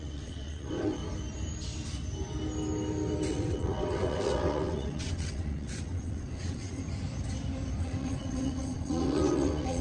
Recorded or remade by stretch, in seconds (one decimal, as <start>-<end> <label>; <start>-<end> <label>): 0.0-1.0 remade; 1.0-3.3 recorded; 3.3-6.8 remade; 6.8-7.8 recorded; 7.8-9.8 remade